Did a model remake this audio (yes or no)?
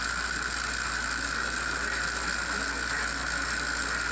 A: no